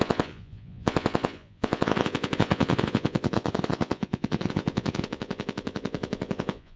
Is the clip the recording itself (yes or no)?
no